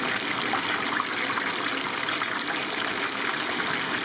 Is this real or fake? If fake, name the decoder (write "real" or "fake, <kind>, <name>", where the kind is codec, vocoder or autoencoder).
real